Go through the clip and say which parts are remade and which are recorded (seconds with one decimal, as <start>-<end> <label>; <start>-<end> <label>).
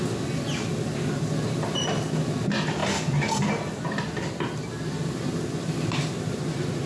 0.0-6.9 recorded